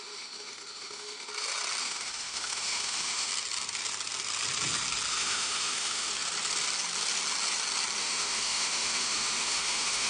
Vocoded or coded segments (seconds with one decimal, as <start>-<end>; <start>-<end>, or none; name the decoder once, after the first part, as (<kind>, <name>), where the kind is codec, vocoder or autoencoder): 0.0-1.3 (autoencoder, DAC-VAE); 1.8-3.3; 5.1-6.1; 8.0-10.1